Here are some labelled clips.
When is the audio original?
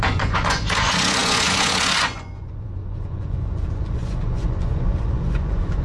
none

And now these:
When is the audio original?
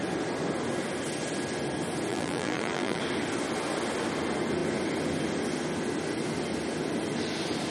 0.0-2.1; 3.0-7.7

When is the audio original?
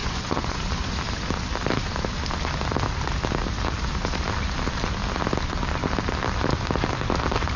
0.6-7.6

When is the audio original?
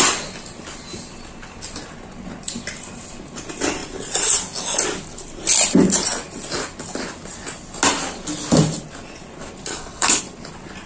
0.0-9.7; 10.2-10.9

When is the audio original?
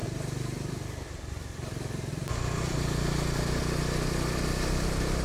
1.6-2.1; 3.6-5.2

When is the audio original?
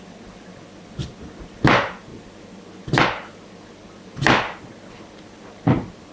0.0-6.1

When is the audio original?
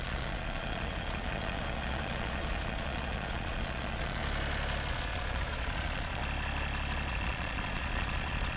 4.2-4.9; 6.2-7.1